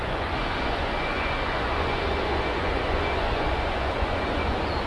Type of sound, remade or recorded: remade